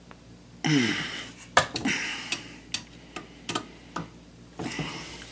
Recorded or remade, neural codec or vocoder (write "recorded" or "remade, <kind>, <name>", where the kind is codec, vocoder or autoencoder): recorded